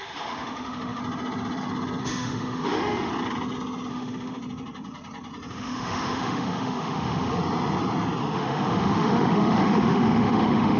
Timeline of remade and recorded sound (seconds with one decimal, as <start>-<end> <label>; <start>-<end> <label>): 0.0-1.0 remade; 1.0-2.0 recorded; 2.0-3.1 remade; 3.1-3.9 recorded; 3.9-4.4 remade; 4.4-5.5 recorded; 5.5-7.4 remade; 7.4-8.2 recorded; 8.2-10.8 remade